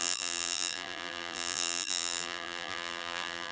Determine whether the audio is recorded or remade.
remade